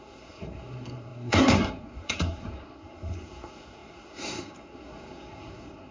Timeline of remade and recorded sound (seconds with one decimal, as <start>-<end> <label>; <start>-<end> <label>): 0.0-5.9 remade